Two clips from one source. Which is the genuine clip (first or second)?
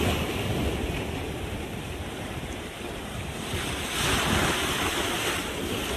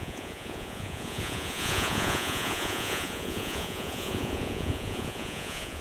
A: first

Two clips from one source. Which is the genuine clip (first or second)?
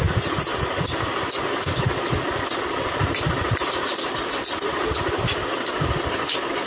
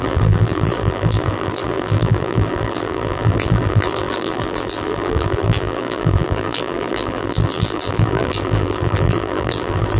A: first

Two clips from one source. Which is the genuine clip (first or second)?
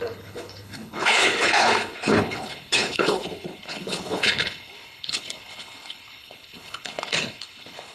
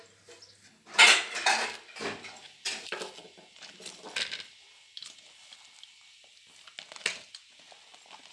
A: second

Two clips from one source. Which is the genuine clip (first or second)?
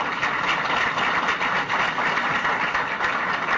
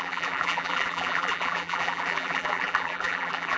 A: first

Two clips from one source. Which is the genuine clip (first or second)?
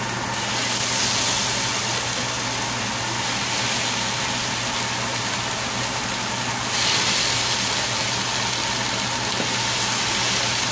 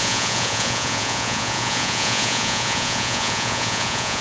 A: first